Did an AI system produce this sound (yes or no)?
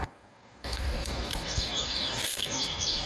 yes